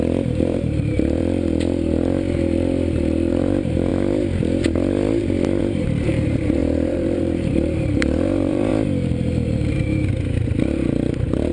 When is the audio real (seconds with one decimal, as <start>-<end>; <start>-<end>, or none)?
1.2-3.3; 3.9-5.6; 8.7-11.1